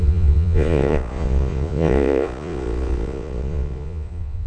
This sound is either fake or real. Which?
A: fake